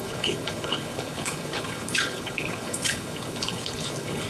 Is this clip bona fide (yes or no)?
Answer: no